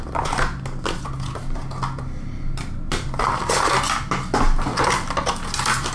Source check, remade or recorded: recorded